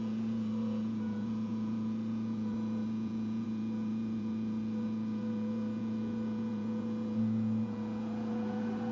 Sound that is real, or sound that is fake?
fake